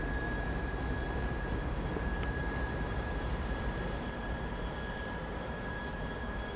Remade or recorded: remade